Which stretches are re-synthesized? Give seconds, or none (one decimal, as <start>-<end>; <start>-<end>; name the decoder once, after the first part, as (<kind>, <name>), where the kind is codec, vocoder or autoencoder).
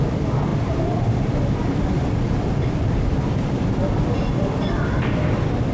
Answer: 0.0-5.7 (vocoder, BigVGAN v2)